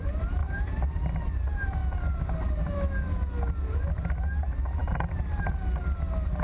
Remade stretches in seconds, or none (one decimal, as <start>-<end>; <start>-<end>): 0.4-1.1

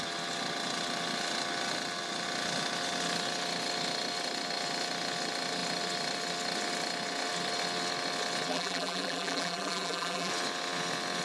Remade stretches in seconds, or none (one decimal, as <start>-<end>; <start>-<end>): 8.5-10.3

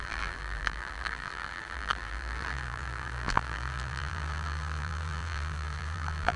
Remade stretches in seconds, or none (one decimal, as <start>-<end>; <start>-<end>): 0.0-6.4

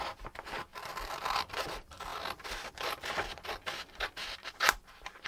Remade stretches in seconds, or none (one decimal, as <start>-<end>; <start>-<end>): none

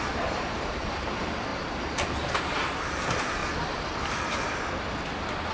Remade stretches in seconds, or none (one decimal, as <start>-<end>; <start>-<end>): 0.0-3.4

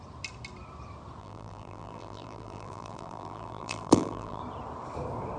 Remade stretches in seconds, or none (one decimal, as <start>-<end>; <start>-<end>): 1.2-4.4

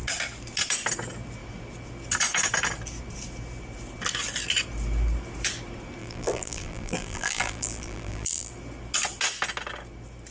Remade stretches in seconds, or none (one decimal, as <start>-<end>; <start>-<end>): 6.0-8.5

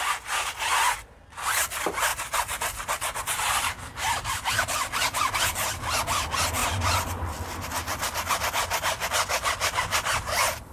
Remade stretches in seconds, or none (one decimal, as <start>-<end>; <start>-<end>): 2.1-5.3